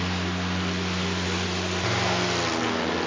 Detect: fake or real real